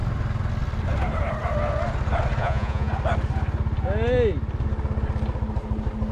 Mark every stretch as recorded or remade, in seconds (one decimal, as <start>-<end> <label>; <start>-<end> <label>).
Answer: 0.0-2.4 recorded; 2.4-2.9 remade; 2.9-6.1 recorded